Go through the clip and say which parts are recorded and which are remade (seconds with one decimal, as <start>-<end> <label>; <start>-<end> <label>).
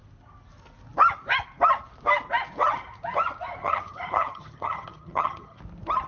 0.0-3.6 recorded; 3.6-5.6 remade; 5.6-6.1 recorded